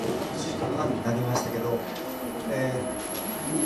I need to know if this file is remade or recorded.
recorded